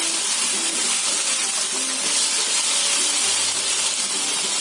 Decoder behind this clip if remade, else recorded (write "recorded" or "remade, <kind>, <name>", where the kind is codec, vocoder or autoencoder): recorded